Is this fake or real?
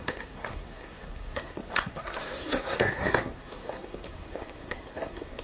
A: fake